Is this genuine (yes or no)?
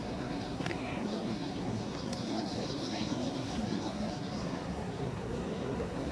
no